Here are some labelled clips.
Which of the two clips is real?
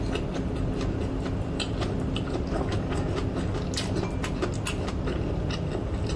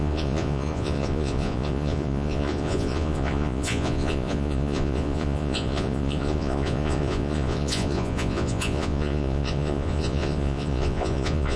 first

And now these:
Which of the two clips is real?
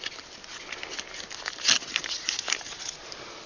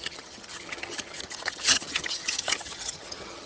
first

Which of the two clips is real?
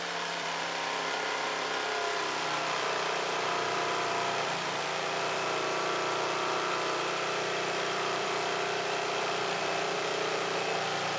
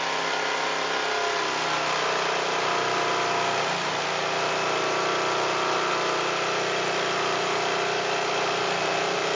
second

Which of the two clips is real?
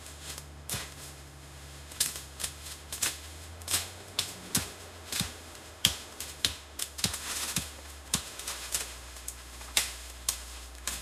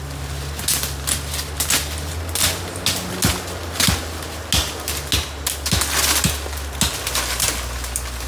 second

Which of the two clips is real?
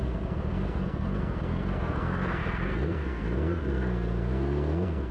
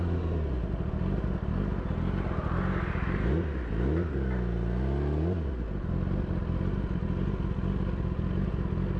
second